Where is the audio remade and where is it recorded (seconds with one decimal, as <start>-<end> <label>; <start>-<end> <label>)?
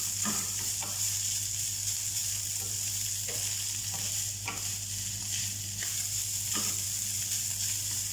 0.0-8.1 recorded